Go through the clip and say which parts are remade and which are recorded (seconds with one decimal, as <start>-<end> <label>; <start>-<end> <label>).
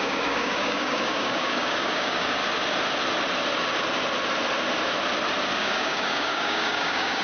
0.0-2.4 remade; 2.4-5.5 recorded; 5.5-7.2 remade